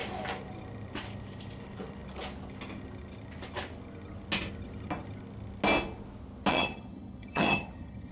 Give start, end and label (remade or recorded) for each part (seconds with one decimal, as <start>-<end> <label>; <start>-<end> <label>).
0.0-6.5 recorded; 6.5-8.1 remade